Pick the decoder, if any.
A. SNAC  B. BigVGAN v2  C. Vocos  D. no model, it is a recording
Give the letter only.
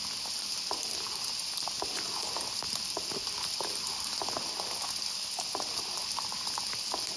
D